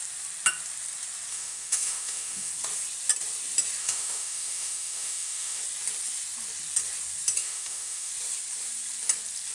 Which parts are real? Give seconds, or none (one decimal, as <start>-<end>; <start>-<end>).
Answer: 0.0-1.3; 2.5-3.8; 5.6-7.4; 8.1-9.5